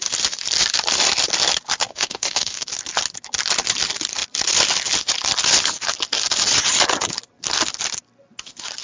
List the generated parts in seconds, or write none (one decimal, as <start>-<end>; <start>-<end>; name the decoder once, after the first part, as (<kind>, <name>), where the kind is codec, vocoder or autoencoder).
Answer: 1.9-2.7 (autoencoder, DAC-VAE)

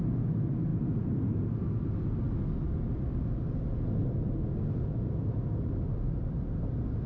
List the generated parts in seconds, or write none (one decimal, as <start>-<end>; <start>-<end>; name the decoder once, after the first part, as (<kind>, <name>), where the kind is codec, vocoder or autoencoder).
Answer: none